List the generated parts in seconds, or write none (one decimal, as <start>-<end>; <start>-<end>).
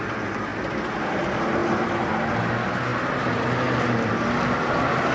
0.5-1.0; 1.6-2.1; 2.9-4.1